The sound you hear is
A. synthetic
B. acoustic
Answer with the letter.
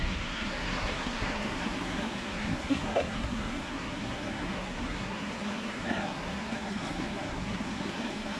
A